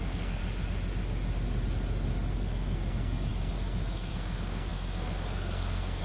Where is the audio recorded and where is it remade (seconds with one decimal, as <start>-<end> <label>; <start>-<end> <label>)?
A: 0.0-0.4 remade; 0.4-2.3 recorded; 2.3-6.0 remade